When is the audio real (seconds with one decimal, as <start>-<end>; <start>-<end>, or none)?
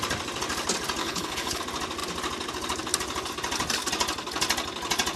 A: 0.0-1.0; 1.6-5.2